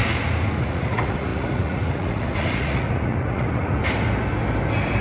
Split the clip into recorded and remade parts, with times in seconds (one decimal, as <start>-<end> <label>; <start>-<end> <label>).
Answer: 0.0-0.6 recorded; 0.6-3.8 remade; 3.8-5.0 recorded